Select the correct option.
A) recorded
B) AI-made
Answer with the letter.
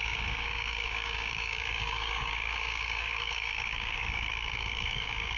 B